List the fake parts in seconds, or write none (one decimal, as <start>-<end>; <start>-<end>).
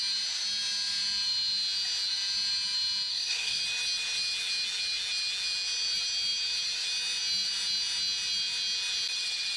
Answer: 3.1-3.6